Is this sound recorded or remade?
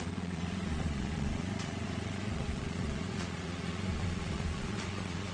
remade